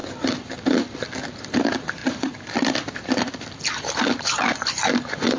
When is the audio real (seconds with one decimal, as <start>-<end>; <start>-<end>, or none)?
1.6-2.0